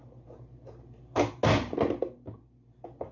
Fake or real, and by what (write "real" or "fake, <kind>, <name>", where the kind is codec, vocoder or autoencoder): real